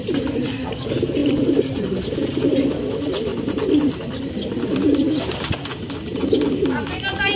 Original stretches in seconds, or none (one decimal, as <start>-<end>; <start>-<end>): 0.0-1.2; 2.0-7.4